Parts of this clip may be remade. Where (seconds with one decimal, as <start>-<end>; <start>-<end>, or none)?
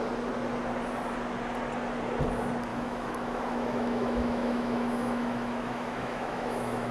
2.7-6.9